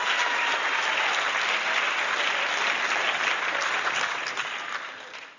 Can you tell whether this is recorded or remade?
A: recorded